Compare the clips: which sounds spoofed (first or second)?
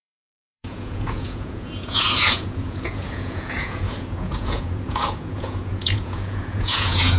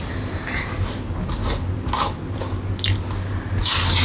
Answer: first